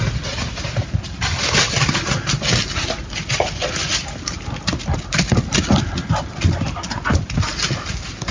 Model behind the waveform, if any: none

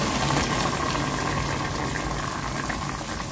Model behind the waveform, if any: none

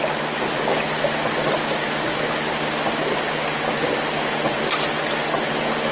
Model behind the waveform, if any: none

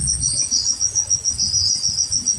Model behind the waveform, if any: none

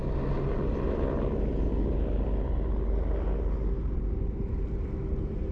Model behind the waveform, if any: none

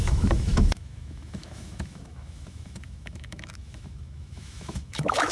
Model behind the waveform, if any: autoencoder, DAC-VAE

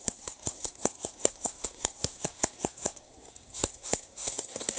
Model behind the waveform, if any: codec, SNAC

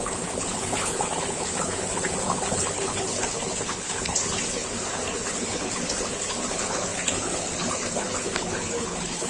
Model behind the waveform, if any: codec, HILCodec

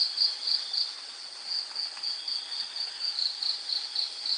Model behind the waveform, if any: none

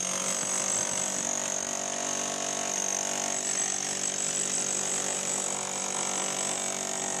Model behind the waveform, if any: none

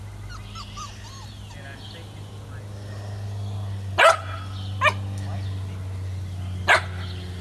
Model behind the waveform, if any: none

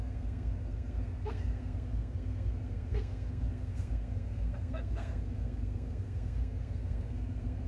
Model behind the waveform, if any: codec, SNAC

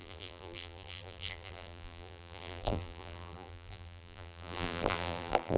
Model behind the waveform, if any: vocoder, BigVGAN v2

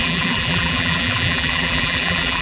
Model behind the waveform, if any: vocoder, BigVGAN v2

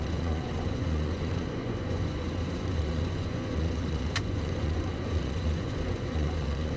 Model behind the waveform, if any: vocoder, Vocos